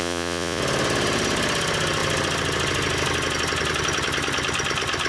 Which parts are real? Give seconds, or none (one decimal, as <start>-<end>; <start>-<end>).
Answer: 0.6-5.1